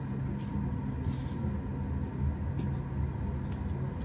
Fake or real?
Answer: real